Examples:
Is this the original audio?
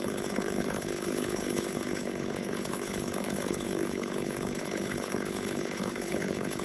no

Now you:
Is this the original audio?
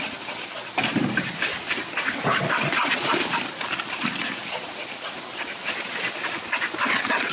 yes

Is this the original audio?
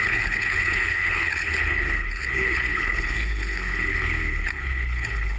no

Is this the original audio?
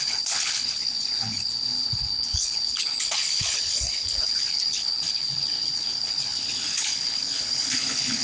no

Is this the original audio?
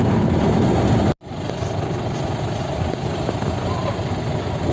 yes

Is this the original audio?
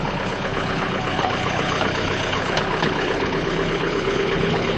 no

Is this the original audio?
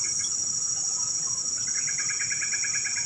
yes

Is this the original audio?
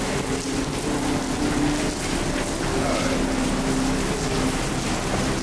yes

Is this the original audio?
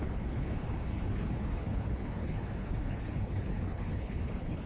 no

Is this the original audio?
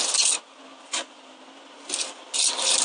yes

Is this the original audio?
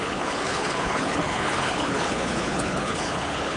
no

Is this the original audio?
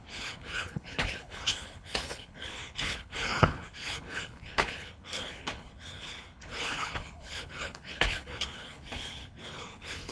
no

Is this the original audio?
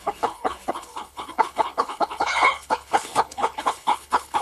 no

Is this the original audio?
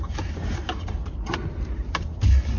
yes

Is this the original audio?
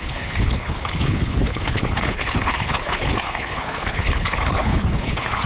no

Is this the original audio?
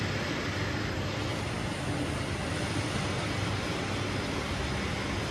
yes